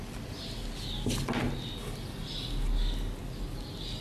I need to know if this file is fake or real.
real